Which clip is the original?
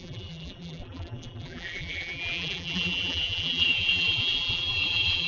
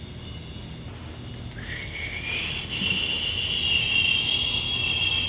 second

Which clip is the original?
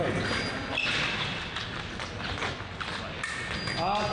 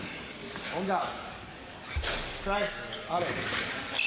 first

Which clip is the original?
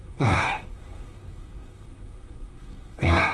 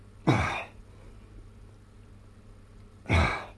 second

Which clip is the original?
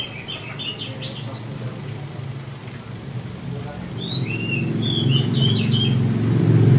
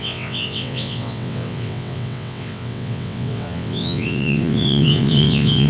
first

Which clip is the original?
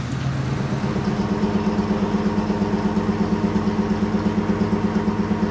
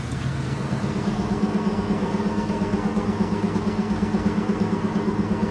first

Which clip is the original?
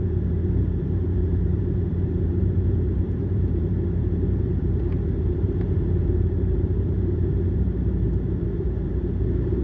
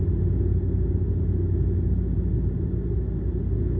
second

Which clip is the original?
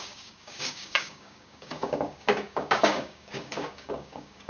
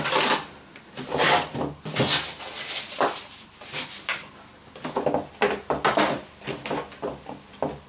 second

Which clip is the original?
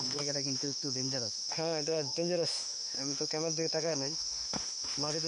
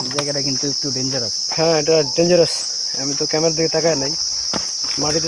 second